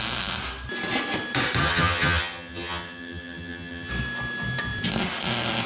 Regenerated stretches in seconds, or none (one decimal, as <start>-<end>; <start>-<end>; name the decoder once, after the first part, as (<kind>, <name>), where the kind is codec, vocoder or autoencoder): 1.6-3.9 (vocoder, HiFi-GAN)